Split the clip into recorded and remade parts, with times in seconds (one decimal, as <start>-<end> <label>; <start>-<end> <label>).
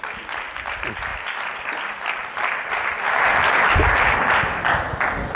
0.0-5.4 recorded